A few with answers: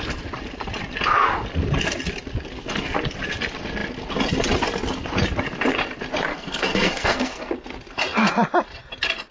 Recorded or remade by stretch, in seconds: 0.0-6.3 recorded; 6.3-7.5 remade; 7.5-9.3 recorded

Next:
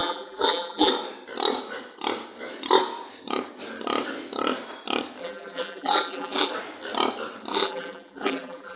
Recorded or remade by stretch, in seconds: 0.0-0.9 remade; 0.9-5.2 recorded; 5.2-6.5 remade; 6.5-7.5 recorded; 7.5-8.8 remade

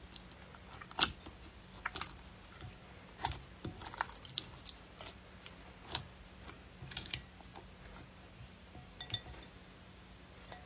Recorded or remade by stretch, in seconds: 0.0-10.7 recorded

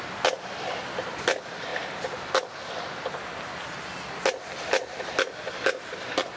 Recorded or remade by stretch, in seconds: 0.0-6.4 recorded